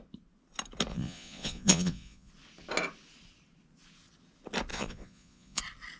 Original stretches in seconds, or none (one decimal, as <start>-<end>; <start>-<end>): 0.0-0.9; 2.3-4.7; 5.6-6.0